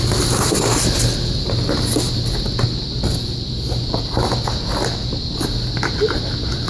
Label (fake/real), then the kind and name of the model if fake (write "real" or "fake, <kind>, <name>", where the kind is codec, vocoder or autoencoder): real